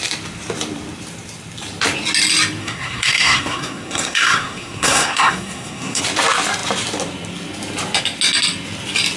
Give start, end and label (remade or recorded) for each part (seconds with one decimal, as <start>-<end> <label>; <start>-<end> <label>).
0.0-2.6 recorded; 2.6-6.0 remade; 6.0-9.2 recorded